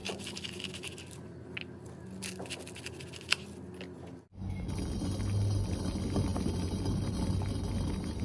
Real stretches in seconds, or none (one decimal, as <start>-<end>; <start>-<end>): 0.0-8.2